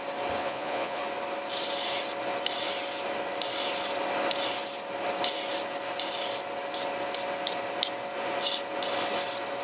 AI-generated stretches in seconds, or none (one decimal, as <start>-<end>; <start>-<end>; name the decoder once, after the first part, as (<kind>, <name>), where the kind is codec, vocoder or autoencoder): 0.4-1.0 (vocoder, Vocos)